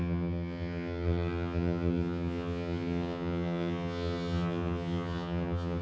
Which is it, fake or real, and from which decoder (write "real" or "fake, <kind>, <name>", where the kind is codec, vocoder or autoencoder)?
fake, vocoder, HiFi-GAN